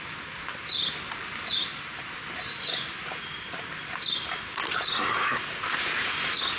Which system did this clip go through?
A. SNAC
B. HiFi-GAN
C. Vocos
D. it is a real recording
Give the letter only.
D